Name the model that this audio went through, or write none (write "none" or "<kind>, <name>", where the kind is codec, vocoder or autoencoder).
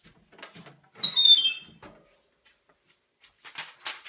none